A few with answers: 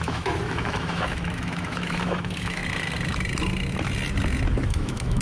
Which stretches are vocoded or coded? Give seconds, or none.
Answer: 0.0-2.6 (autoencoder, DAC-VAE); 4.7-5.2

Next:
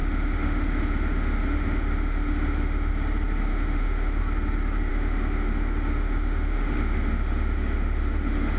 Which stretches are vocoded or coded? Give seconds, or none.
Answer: 0.0-2.9 (autoencoder, DAC-VAE); 3.5-4.2; 4.9-8.6

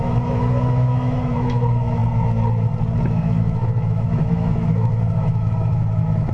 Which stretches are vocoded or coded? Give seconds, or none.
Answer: 0.0-2.0 (autoencoder, DAC-VAE); 3.1-6.3